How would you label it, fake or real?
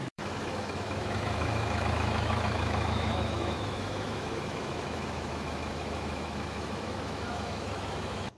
fake